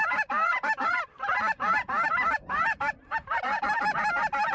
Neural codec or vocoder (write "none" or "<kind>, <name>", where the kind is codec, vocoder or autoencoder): vocoder, BigVGAN v2